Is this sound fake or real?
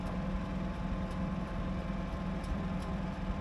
fake